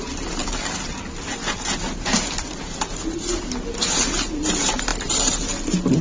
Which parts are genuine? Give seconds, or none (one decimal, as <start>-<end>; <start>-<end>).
0.0-6.0